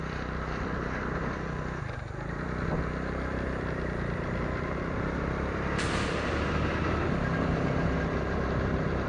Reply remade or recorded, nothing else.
remade